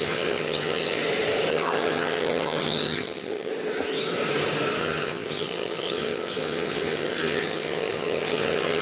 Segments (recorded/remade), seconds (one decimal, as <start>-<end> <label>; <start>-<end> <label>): 0.0-1.0 remade; 1.0-1.5 recorded; 1.5-3.5 remade; 3.5-4.8 recorded; 4.8-8.8 remade